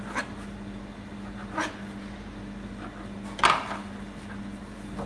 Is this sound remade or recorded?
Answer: recorded